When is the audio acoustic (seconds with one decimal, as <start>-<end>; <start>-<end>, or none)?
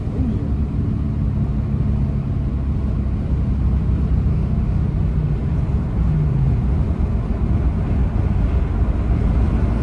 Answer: 0.0-4.3; 4.8-9.8